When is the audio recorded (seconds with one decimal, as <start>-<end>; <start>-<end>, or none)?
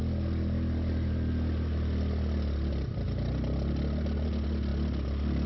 0.0-5.5